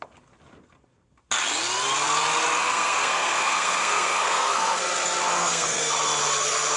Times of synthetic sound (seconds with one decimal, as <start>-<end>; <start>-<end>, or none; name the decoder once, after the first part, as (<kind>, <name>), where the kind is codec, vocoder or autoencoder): 2.6-4.8 (codec, SNAC); 5.3-5.9